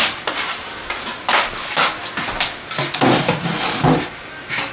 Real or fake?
real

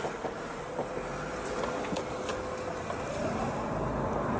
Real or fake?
real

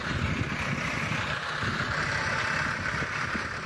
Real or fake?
real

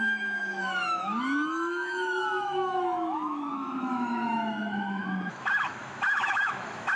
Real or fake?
fake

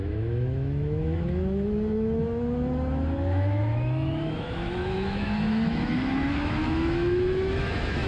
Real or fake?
fake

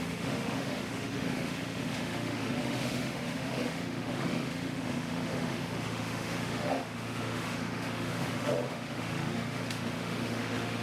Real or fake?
fake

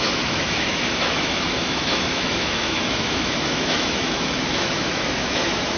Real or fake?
fake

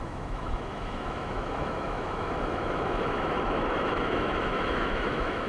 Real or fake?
fake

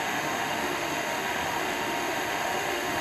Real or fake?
fake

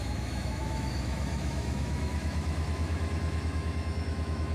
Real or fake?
fake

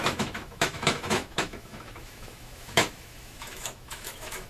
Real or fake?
fake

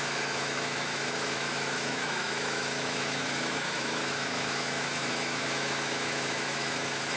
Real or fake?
fake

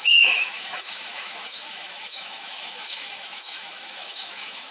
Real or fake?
fake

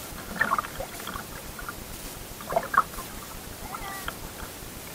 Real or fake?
real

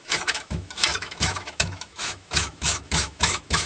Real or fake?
fake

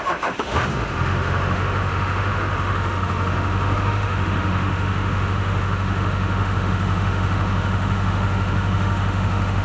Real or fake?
fake